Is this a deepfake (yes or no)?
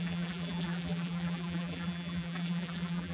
yes